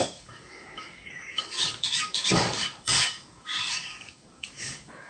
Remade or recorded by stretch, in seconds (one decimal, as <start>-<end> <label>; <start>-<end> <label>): 0.0-5.1 remade

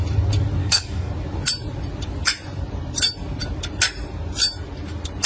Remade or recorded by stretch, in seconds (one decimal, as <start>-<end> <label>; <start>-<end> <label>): 0.0-0.6 recorded; 0.6-1.1 remade; 1.1-5.3 recorded